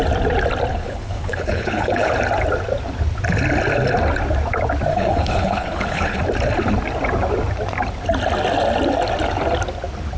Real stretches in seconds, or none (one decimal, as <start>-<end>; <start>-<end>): 0.0-0.7; 2.1-4.9; 6.2-10.2